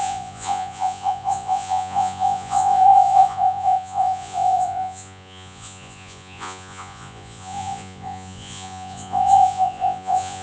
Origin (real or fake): fake